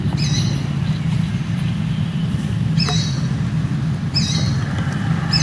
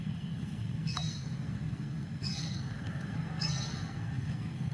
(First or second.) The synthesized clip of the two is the second